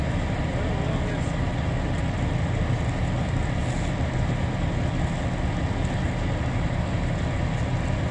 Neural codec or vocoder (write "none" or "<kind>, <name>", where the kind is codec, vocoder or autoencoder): none